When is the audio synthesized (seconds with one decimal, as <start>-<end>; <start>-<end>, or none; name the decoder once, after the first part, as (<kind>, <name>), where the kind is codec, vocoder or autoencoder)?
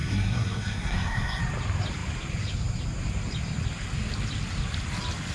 0.0-1.4 (codec, SNAC)